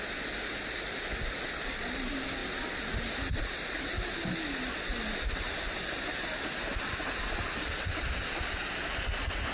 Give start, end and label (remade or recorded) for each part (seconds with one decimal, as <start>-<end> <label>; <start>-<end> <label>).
0.0-9.5 recorded